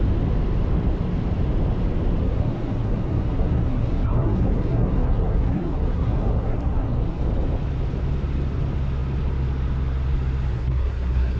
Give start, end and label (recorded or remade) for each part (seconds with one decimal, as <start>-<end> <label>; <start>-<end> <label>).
0.0-2.2 recorded; 2.2-7.2 remade; 7.2-10.5 recorded; 10.5-11.4 remade